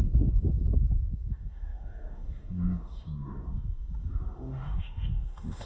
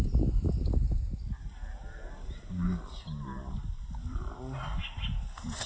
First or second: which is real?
second